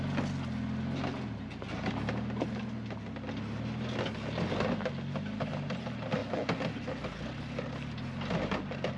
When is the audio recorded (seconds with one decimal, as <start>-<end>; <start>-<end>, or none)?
0.0-9.0